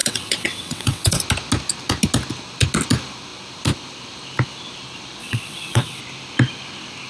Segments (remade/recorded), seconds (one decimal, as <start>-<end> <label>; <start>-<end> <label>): 0.0-1.2 remade; 1.2-5.2 recorded; 5.2-6.0 remade; 6.0-7.1 recorded